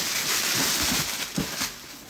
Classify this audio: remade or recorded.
recorded